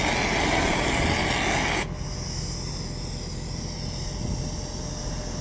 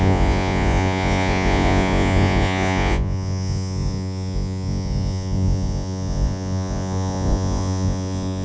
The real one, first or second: first